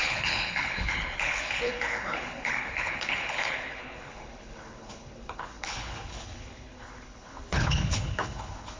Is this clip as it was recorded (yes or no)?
no